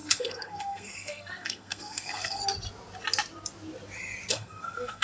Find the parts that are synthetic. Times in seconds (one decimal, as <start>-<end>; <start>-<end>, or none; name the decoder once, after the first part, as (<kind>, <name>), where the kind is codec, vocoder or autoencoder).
0.0-2.4 (codec, SNAC); 4.3-5.0